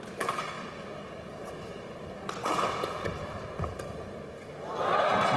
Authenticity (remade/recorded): recorded